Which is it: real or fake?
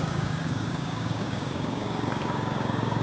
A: fake